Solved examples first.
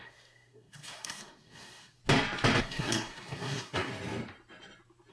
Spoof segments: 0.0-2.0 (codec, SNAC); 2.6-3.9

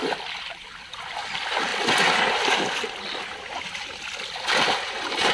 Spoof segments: 0.0-1.0 (vocoder, BigVGAN v2)

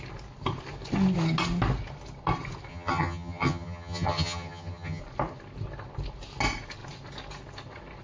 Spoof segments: 2.7-5.0 (vocoder, HiFi-GAN)

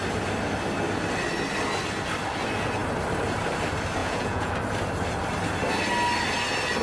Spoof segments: 4.0-4.5 (vocoder, Vocos)

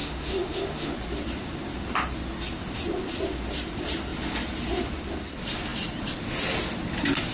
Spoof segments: 0.0-0.9 (autoencoder, DAC-VAE)

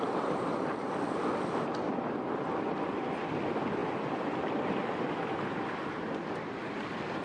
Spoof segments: none